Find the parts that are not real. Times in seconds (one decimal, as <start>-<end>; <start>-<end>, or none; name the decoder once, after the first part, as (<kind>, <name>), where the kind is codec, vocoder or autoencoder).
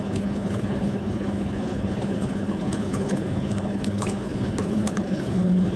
0.0-5.8 (codec, HILCodec)